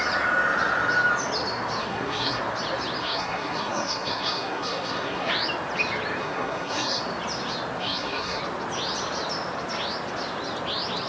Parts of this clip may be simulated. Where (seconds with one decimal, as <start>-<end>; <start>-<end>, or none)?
1.8-2.4; 3.0-5.3; 6.2-7.0; 7.8-8.4